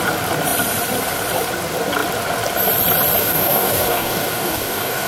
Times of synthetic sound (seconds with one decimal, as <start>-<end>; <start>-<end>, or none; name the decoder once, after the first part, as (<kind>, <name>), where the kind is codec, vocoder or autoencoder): 3.2-5.1 (codec, DAC)